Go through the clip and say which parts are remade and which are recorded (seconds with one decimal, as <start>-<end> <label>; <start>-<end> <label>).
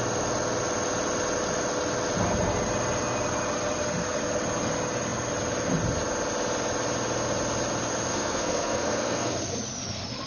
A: 0.0-8.1 recorded; 8.1-9.3 remade; 9.3-10.3 recorded